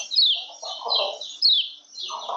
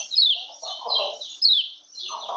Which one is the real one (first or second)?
first